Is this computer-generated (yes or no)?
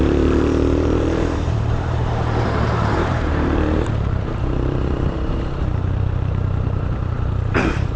yes